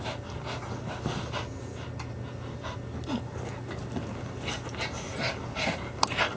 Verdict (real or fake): real